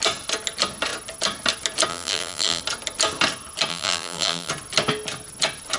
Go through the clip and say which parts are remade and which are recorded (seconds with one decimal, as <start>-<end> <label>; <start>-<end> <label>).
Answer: 0.0-1.9 recorded; 1.9-2.6 remade; 2.6-3.7 recorded; 3.7-4.5 remade; 4.5-5.8 recorded

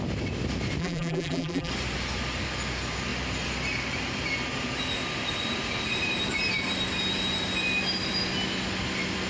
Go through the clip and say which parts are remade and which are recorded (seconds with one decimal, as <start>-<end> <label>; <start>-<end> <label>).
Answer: 0.0-0.8 recorded; 0.8-1.7 remade; 1.7-9.3 recorded

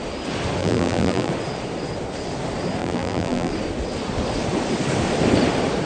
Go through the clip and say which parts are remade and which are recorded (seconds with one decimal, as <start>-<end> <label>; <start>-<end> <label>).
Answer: 0.0-0.6 recorded; 0.6-1.3 remade; 1.3-2.8 recorded; 2.8-3.5 remade; 3.5-5.9 recorded

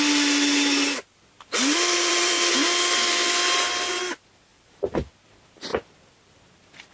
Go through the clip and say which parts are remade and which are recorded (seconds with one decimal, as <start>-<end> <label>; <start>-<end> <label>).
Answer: 0.0-0.8 recorded; 0.8-2.5 remade; 2.5-4.5 recorded; 4.5-5.1 remade; 5.1-5.7 recorded; 5.7-6.4 remade; 6.4-6.9 recorded